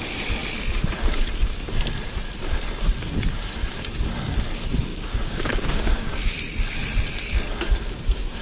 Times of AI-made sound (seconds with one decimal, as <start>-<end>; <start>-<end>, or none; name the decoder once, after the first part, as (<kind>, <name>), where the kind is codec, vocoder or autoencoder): 4.9-6.3 (codec, DAC)